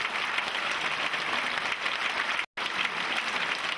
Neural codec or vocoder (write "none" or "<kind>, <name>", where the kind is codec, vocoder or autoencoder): none